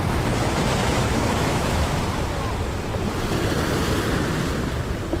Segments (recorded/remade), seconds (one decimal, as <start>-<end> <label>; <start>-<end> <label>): 0.0-0.8 recorded; 0.8-2.0 remade; 2.0-5.2 recorded